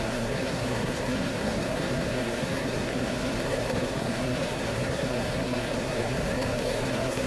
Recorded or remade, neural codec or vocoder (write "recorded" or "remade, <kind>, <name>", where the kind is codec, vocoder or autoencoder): remade, codec, SNAC